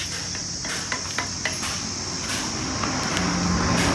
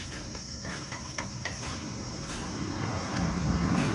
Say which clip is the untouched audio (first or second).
first